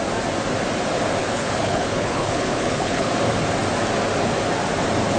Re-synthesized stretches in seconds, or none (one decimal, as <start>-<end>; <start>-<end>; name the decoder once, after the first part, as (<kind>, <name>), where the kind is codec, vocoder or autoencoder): 1.2-3.1 (codec, HILCodec)